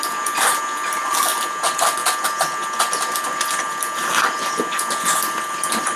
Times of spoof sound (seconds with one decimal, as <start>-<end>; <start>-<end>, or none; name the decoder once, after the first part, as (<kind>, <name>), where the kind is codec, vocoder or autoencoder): none